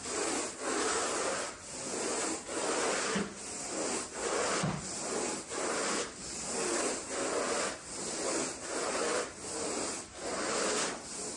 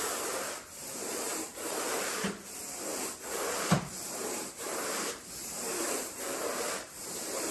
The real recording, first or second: first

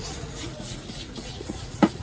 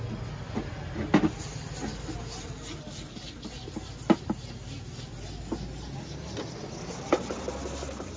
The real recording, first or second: second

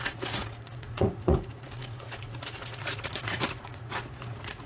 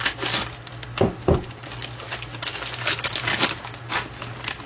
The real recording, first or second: second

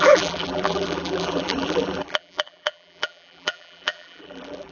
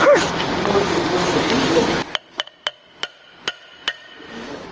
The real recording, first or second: second